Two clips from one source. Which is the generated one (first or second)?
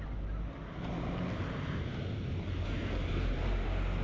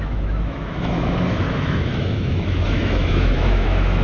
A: second